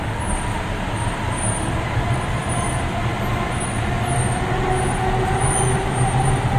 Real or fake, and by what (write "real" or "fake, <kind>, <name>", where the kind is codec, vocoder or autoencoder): real